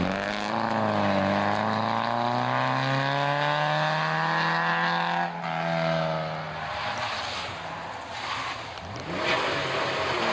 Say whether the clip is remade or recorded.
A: recorded